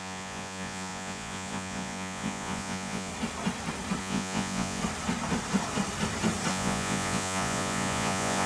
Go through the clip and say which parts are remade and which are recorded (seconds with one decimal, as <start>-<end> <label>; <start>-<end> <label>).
0.0-3.1 remade; 3.1-4.0 recorded; 4.0-4.8 remade; 4.8-6.5 recorded; 6.5-8.5 remade